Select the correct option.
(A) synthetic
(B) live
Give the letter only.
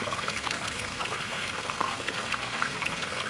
A